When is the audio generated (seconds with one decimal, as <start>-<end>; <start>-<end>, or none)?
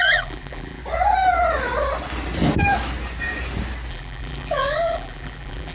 0.0-0.8; 3.9-5.7